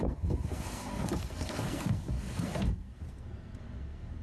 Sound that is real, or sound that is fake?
fake